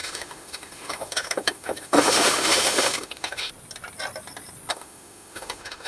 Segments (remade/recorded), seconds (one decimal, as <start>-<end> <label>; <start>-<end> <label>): 0.0-3.5 remade; 3.5-4.7 recorded; 4.7-5.9 remade